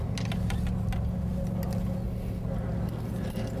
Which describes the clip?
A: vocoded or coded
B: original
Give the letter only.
B